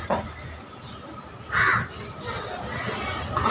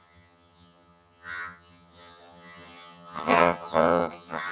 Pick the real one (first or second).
first